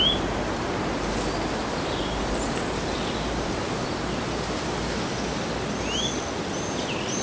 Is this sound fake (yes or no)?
no